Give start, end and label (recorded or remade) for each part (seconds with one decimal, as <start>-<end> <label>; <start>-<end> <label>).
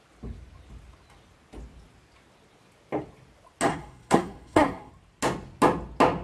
0.0-3.7 recorded; 3.7-4.9 remade; 4.9-6.2 recorded